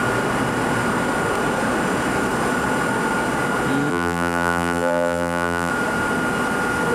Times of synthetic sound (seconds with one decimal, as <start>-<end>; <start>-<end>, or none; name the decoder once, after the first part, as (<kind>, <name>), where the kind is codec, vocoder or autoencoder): 3.9-5.7 (vocoder, BigVGAN v2)

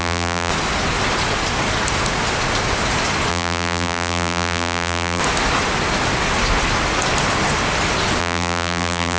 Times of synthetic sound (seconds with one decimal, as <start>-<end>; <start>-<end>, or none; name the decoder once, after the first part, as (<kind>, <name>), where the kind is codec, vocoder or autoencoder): 0.0-0.5 (vocoder, BigVGAN v2); 3.3-5.2; 8.2-9.2

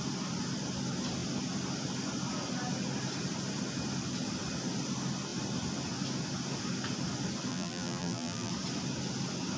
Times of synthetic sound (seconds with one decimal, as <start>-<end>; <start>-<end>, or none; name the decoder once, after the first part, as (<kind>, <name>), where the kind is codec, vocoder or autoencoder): 7.5-8.5 (vocoder, BigVGAN v2)

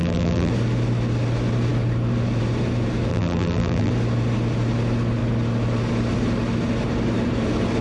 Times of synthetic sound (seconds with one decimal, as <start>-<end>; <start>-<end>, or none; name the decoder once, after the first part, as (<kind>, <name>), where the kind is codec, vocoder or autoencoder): 0.0-0.5 (vocoder, BigVGAN v2); 3.1-3.9

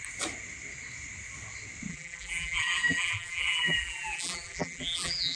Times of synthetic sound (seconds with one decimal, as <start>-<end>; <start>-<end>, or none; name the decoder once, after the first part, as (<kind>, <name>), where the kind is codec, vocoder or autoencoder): 1.9-5.4 (vocoder, BigVGAN v2)

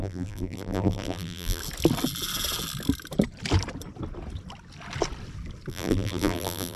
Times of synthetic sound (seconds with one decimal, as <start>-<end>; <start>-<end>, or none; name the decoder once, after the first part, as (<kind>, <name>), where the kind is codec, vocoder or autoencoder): 0.0-1.6 (vocoder, BigVGAN v2); 5.7-6.8